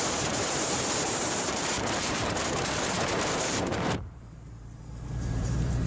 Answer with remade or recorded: remade